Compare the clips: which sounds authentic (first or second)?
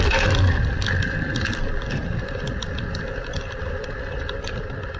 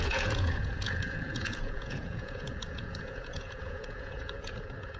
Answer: first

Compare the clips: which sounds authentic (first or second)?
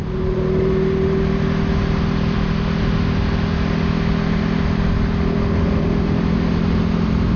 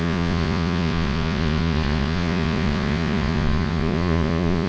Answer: first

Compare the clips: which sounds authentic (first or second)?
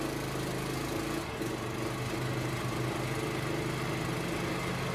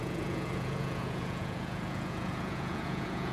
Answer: first